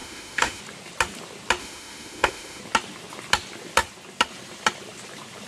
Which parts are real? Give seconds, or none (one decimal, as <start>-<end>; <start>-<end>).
0.6-1.6; 2.6-5.5